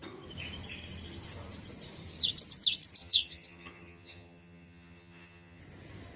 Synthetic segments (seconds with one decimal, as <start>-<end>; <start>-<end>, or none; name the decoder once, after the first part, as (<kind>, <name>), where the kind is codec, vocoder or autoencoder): 3.0-5.6 (vocoder, HiFi-GAN)